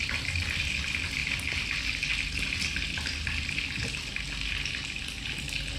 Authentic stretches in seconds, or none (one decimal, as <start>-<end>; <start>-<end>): 0.0-5.8